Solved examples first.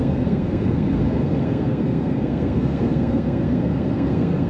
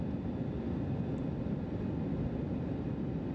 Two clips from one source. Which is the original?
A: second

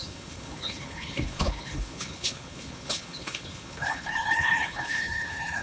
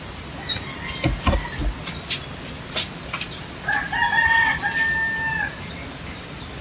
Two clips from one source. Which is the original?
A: second